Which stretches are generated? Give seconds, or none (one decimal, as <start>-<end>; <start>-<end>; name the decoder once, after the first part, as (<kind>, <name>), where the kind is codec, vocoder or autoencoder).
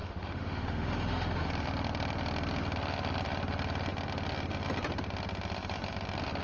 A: 0.0-1.5 (autoencoder, DAC-VAE)